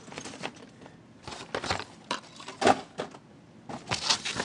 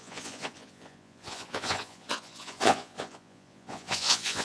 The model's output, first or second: second